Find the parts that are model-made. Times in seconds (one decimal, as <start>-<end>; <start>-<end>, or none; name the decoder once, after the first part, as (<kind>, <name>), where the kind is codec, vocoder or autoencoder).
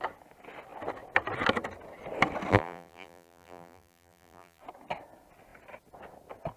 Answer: 2.5-4.6 (vocoder, BigVGAN v2)